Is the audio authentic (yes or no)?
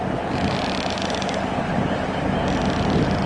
yes